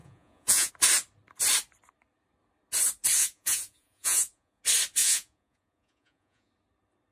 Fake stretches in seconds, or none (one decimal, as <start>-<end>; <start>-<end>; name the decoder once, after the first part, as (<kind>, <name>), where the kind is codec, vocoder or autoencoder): 0.0-0.7 (vocoder, Vocos); 3.2-4.6; 5.0-6.5